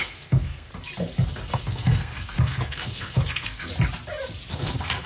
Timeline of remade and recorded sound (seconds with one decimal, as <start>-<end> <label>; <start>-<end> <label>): 0.0-0.7 remade; 0.7-1.5 recorded; 1.5-3.7 remade; 3.7-4.5 recorded; 4.5-5.1 remade